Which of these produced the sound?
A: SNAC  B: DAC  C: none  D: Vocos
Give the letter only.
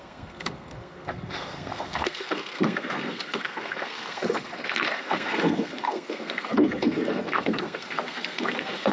A